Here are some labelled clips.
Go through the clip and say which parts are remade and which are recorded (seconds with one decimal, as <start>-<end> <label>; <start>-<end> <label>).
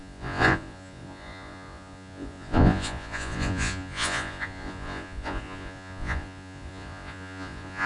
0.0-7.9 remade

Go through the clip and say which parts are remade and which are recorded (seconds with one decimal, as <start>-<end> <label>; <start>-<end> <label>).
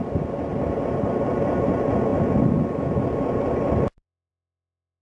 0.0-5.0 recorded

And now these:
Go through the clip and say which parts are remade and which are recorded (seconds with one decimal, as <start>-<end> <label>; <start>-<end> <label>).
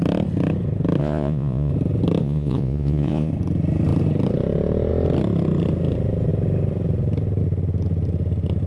0.0-1.0 recorded; 1.0-1.7 remade; 1.7-2.2 recorded; 2.2-3.3 remade; 3.3-8.7 recorded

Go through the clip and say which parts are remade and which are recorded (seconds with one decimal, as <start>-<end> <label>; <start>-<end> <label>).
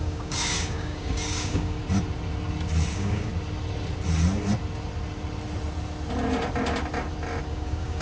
0.0-1.8 remade; 1.8-2.9 recorded; 2.9-3.3 remade; 3.3-7.5 recorded; 7.5-8.0 remade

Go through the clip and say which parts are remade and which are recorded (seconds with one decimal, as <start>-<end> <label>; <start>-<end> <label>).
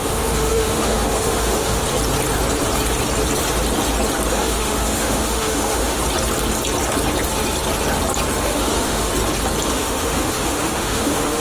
0.0-1.8 remade; 1.8-4.3 recorded; 4.3-6.0 remade; 6.0-8.4 recorded; 8.4-9.1 remade; 9.1-9.7 recorded; 9.7-11.4 remade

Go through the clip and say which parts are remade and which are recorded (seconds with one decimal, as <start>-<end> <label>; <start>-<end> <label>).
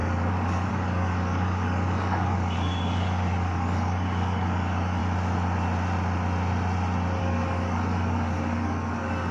0.0-5.0 remade; 5.0-7.2 recorded; 7.2-9.3 remade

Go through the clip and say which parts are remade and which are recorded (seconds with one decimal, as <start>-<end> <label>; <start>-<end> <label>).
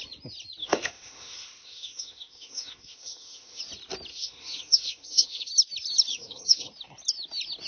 0.0-0.6 recorded; 0.6-3.6 remade; 3.6-4.1 recorded; 4.1-5.5 remade; 5.5-6.1 recorded; 6.1-6.7 remade; 6.7-7.7 recorded